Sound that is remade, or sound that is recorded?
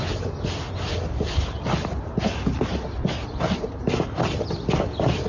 recorded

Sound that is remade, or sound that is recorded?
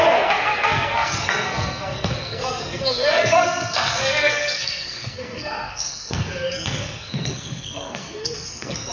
remade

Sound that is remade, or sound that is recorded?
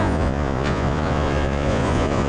remade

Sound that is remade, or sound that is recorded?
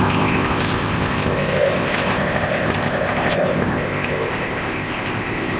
remade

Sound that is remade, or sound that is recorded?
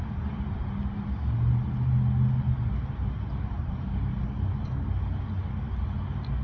recorded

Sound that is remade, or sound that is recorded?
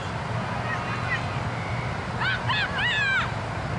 recorded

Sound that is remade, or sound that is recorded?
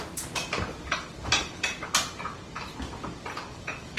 recorded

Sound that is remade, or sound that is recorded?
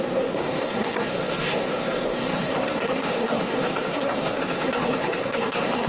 remade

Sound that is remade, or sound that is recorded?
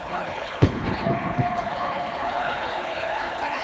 remade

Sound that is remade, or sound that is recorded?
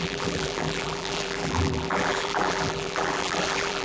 remade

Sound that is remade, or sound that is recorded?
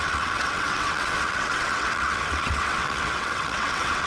remade